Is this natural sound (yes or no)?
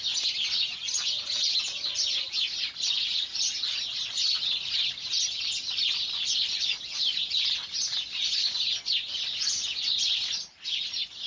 yes